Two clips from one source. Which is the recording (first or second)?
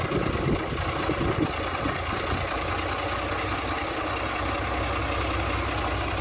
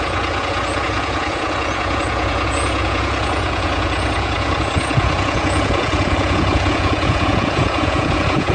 first